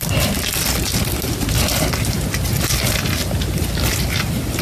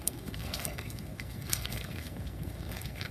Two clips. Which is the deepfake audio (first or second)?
second